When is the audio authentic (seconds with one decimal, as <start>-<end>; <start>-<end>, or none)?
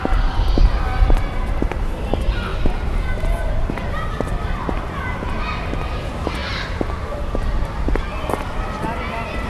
0.0-9.5